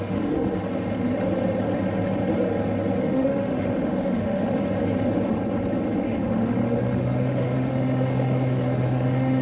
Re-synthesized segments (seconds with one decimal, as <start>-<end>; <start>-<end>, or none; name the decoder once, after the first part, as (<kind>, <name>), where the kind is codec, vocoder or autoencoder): 0.0-0.6 (autoencoder, DAC-VAE); 3.0-4.6; 6.0-9.4